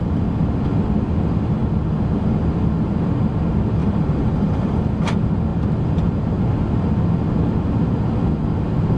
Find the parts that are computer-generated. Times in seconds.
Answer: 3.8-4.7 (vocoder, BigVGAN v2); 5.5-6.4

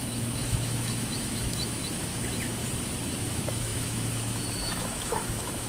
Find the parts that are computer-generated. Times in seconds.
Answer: 0.0-2.6 (autoencoder, DAC-VAE); 3.2-5.7

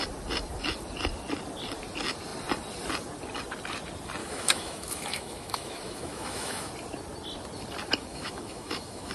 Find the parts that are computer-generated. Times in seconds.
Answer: 4.2-6.7 (autoencoder, DAC-VAE); 8.1-9.1

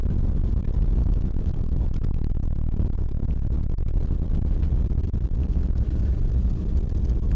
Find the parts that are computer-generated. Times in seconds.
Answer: 1.0-1.8 (autoencoder, DAC-VAE)

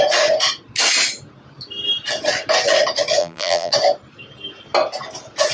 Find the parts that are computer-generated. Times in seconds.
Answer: 3.2-3.7 (vocoder, BigVGAN v2)